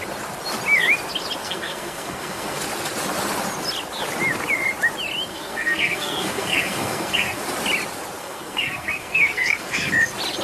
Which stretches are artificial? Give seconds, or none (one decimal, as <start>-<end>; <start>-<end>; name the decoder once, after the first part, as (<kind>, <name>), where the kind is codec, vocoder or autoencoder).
1.4-2.6 (codec, SNAC); 5.3-7.4; 8.2-9.9